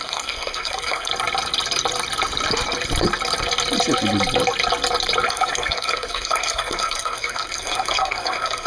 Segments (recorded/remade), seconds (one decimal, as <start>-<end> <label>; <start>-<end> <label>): 0.0-1.1 remade; 1.1-5.3 recorded; 5.3-8.7 remade

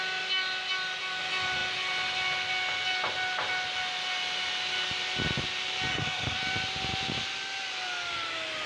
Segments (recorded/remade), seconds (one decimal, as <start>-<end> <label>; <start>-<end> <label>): 0.0-5.9 recorded; 5.9-6.4 remade; 6.4-8.7 recorded

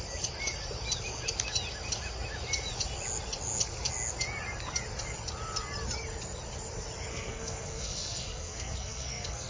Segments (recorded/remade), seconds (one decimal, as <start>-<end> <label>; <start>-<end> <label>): 0.0-7.1 recorded; 7.1-9.5 remade

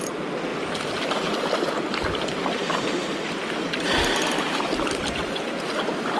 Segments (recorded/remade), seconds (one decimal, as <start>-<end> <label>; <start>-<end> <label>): 0.0-6.2 recorded

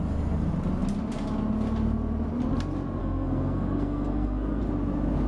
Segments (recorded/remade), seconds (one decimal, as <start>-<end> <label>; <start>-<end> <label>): 0.0-3.0 recorded; 3.0-4.6 remade; 4.6-5.3 recorded